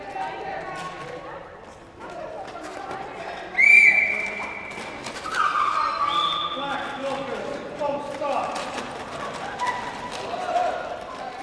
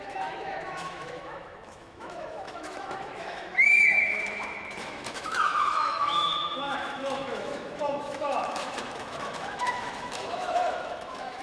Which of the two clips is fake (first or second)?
second